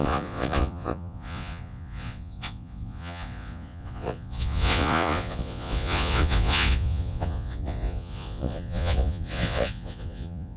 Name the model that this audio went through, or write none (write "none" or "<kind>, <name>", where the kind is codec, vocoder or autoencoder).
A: vocoder, Vocos